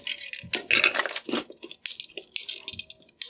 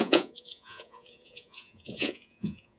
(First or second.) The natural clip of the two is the first